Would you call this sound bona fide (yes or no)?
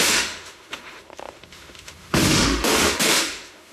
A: no